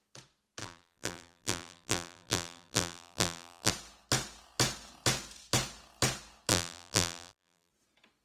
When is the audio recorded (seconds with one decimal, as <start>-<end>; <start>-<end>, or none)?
0.0-0.6; 3.7-6.5; 7.7-8.2